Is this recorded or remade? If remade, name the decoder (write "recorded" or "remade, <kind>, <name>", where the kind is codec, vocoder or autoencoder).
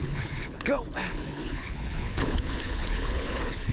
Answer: remade, codec, HILCodec